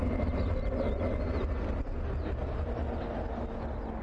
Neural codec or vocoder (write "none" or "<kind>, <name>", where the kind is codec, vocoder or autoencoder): none